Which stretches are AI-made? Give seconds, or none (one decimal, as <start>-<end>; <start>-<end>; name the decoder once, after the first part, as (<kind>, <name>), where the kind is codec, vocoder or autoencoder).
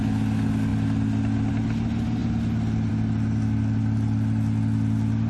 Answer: none